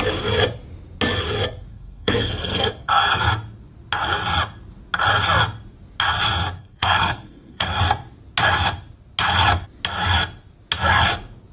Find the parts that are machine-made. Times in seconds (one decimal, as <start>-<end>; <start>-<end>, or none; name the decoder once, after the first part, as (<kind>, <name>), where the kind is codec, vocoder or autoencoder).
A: 1.7-3.2 (codec, SNAC); 6.6-7.8